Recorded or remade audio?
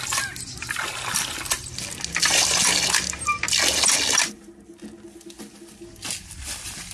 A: recorded